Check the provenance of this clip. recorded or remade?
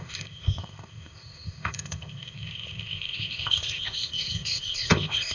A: remade